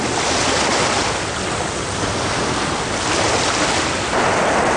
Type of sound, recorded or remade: recorded